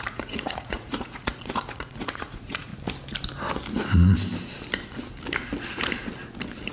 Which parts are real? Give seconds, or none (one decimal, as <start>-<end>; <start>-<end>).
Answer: 2.7-6.7